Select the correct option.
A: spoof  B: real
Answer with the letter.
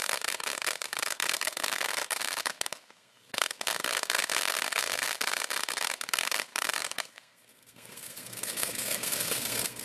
A